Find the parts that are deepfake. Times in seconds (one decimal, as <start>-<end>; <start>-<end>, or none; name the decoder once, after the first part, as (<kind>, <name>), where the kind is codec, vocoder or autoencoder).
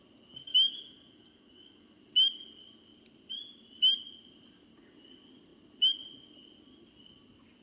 0.5-2.0 (autoencoder, DAC-VAE)